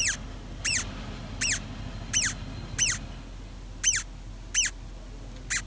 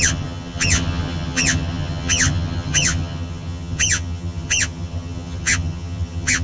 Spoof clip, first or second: second